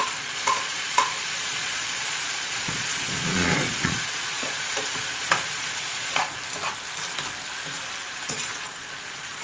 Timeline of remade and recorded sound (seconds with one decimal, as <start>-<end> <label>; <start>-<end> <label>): 0.0-6.4 remade; 6.4-8.1 recorded; 8.1-9.4 remade